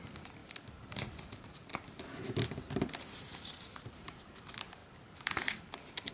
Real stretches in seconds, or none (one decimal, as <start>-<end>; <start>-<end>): 0.4-1.2; 1.7-3.8; 4.8-6.1

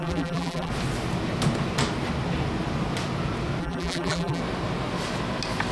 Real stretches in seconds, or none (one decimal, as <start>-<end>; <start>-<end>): 0.7-3.6; 4.4-5.7